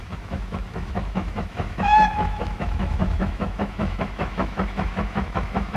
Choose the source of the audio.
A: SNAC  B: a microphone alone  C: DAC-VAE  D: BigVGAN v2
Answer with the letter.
C